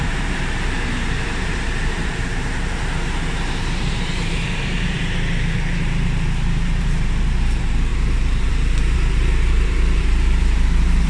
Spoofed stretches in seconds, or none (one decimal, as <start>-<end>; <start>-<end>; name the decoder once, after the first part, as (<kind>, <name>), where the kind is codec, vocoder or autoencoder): 0.0-11.1 (vocoder, BigVGAN v2)